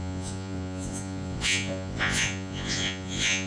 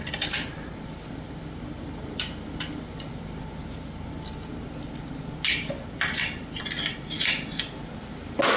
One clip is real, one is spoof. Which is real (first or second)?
second